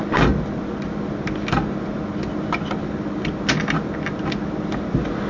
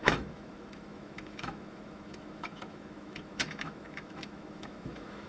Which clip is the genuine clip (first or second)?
first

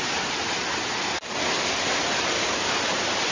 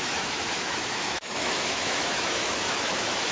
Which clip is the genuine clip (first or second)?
first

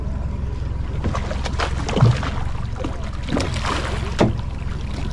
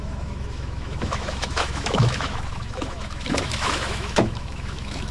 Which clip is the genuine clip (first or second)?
first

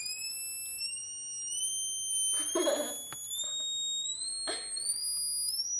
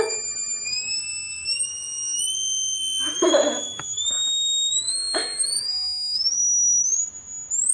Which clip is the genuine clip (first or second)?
first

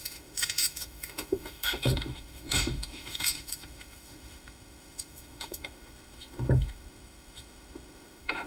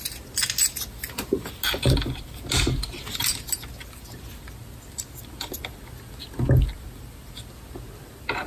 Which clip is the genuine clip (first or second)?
second